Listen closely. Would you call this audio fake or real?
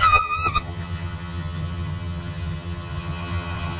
fake